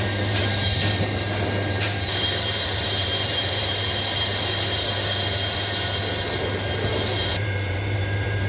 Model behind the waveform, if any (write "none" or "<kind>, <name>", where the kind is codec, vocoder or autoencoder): vocoder, BigVGAN v2